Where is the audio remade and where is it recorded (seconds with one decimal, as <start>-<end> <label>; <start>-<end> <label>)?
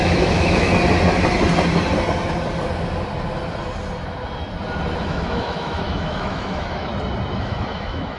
0.0-0.7 remade; 0.7-5.0 recorded; 5.0-6.9 remade; 6.9-7.4 recorded; 7.4-8.2 remade